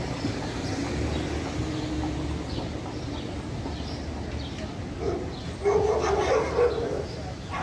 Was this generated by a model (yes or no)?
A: no